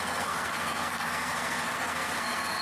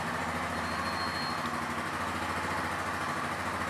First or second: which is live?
second